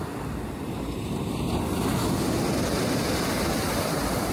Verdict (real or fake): real